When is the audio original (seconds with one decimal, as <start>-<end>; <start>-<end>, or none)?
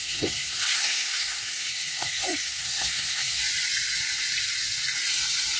3.4-5.6